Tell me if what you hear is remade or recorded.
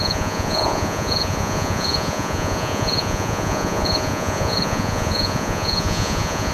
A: remade